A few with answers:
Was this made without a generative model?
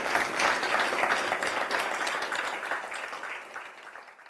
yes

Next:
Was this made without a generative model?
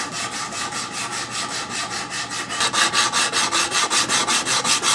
yes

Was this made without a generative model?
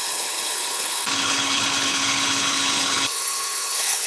no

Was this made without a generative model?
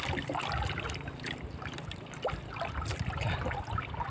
yes